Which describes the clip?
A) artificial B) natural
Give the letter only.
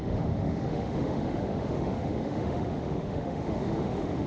A